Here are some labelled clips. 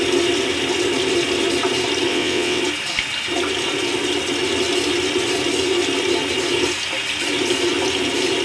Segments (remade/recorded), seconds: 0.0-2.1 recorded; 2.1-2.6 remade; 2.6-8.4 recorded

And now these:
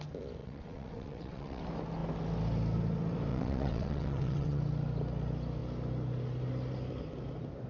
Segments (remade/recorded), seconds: 0.0-0.4 recorded; 0.4-1.6 remade; 1.6-3.3 recorded; 3.3-4.6 remade; 4.6-7.7 recorded

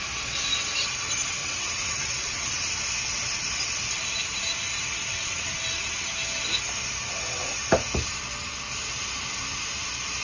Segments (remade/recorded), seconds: 0.0-1.4 recorded; 1.4-2.7 remade; 2.7-5.0 recorded; 5.0-6.1 remade; 6.1-10.2 recorded

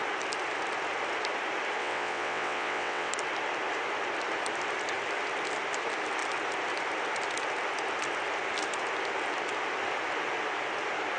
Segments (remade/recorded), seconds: 0.0-1.8 recorded; 1.8-3.1 remade; 3.1-11.2 recorded

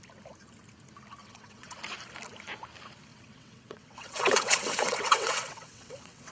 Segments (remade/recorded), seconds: 0.0-1.2 recorded; 1.2-1.8 remade; 1.8-3.1 recorded; 3.1-6.3 remade